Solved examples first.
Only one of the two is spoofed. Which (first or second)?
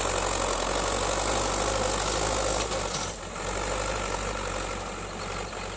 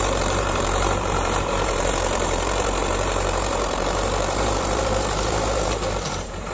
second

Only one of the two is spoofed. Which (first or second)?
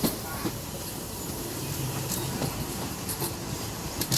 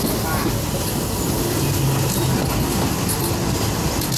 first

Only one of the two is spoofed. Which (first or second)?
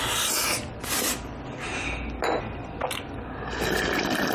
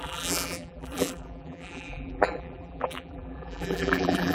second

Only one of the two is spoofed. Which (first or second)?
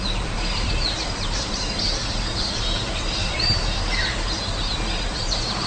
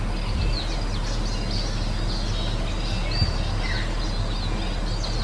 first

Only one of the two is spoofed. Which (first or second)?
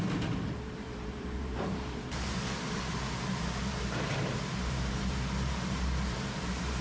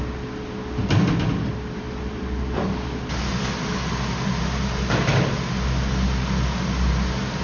first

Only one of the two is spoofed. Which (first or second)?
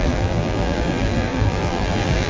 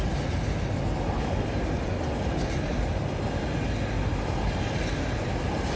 first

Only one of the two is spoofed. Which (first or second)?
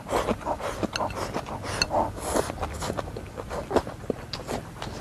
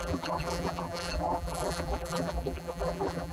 second